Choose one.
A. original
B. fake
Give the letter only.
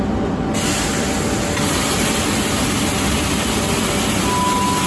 A